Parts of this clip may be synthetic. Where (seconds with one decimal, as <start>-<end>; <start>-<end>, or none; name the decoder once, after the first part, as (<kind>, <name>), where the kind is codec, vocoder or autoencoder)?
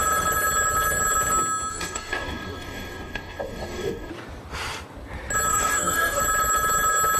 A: 1.7-4.1 (codec, DAC); 5.5-6.2